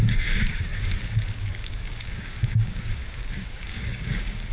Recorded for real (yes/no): no